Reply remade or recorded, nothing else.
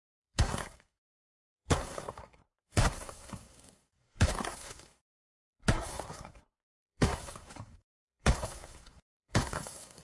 remade